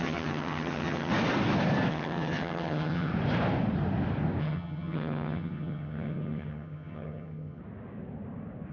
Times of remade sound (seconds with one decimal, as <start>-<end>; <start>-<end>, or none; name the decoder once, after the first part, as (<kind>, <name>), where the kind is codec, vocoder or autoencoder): 0.0-1.1 (vocoder, HiFi-GAN); 1.9-3.1; 4.4-7.6